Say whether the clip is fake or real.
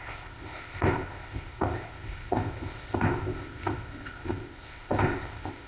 fake